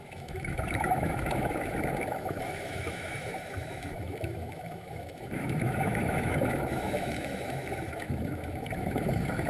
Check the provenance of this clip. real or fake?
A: fake